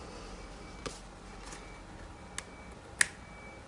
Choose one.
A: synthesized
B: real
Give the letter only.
B